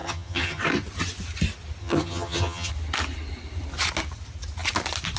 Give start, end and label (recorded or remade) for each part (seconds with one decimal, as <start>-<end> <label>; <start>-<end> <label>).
0.0-0.6 remade; 0.6-1.8 recorded; 1.8-2.7 remade; 2.7-5.2 recorded